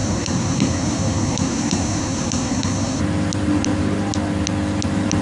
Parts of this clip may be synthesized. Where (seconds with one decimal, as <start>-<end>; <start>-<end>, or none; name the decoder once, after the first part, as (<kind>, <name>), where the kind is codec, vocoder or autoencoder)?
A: 0.0-3.0 (codec, SNAC)